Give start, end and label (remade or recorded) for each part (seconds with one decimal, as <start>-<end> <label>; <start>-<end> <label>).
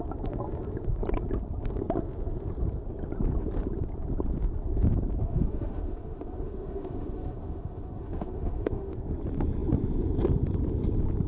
0.0-5.2 recorded; 5.2-8.9 remade; 8.9-11.3 recorded